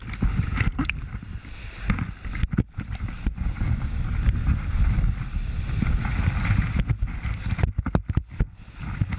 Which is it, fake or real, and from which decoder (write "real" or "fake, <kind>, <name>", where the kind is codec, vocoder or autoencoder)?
real